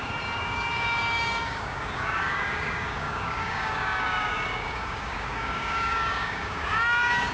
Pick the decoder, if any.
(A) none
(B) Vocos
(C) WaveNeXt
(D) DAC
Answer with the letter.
D